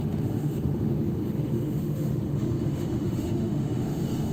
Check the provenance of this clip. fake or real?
fake